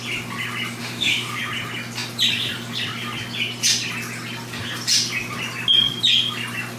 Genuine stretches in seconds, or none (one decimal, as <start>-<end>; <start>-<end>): 0.0-0.8; 1.4-6.8